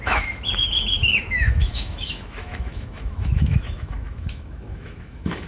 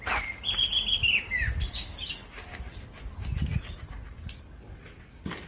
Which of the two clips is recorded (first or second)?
second